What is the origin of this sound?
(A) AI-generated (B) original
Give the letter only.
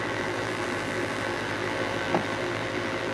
A